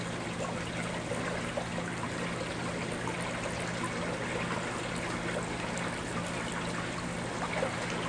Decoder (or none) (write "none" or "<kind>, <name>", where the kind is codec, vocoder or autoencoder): none